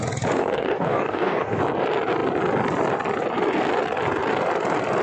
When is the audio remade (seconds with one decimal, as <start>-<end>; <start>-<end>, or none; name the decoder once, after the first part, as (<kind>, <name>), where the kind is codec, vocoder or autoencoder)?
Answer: 0.4-1.6 (codec, DAC)